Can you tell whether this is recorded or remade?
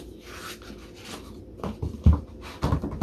recorded